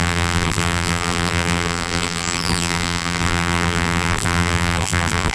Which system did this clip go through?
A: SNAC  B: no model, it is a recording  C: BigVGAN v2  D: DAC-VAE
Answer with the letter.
C